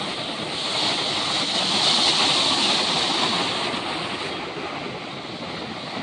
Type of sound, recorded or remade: recorded